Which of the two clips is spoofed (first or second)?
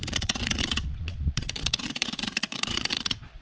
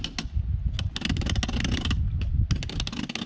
first